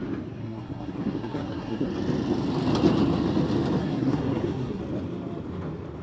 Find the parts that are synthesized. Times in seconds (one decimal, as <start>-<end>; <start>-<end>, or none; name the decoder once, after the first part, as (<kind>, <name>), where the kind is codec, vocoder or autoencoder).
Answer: 0.4-1.9 (codec, SNAC); 3.8-4.8